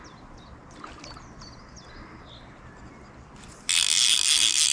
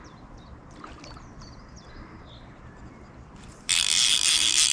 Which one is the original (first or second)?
first